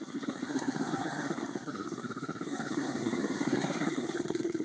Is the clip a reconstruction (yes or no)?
yes